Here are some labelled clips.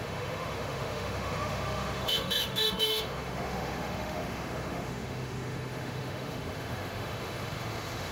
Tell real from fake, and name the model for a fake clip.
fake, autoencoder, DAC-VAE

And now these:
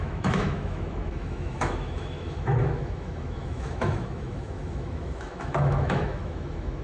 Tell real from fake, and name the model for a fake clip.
fake, autoencoder, DAC-VAE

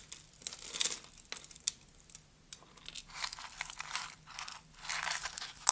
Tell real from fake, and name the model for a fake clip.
real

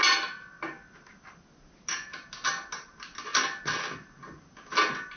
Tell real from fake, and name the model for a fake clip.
real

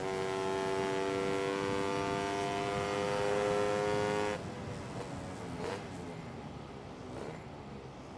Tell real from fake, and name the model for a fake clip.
real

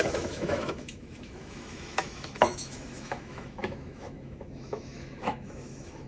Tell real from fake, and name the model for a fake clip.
fake, autoencoder, DAC-VAE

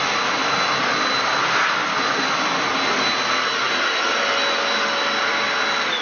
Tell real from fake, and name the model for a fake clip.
real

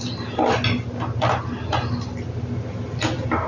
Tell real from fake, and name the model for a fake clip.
real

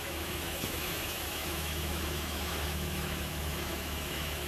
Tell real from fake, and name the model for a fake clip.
fake, autoencoder, DAC-VAE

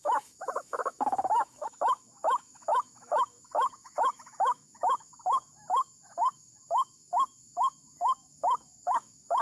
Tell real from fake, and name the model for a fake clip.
fake, autoencoder, DAC-VAE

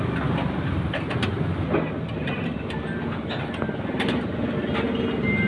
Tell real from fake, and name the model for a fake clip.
real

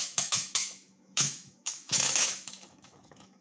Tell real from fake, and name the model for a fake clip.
fake, autoencoder, DAC-VAE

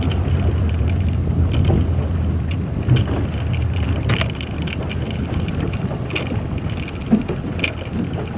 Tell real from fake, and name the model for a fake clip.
real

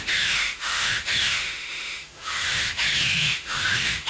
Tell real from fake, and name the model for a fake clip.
fake, autoencoder, DAC-VAE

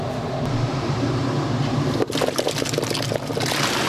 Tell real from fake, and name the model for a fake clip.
real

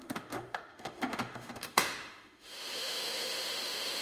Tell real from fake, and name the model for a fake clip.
fake, autoencoder, DAC-VAE